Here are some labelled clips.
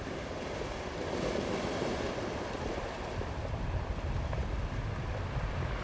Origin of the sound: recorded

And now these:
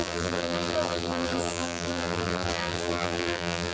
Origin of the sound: remade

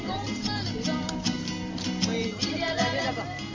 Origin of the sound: remade